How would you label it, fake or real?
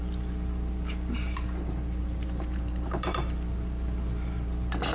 fake